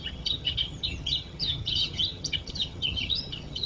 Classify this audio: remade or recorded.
remade